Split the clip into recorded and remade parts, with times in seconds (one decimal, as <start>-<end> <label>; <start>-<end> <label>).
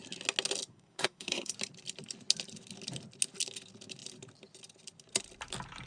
0.0-0.7 recorded; 0.7-1.5 remade; 1.5-5.9 recorded